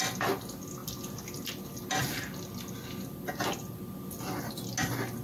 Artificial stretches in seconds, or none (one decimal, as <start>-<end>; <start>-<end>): none